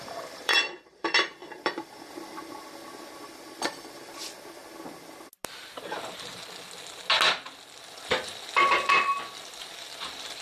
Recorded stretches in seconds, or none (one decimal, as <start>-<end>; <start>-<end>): 4.6-7.8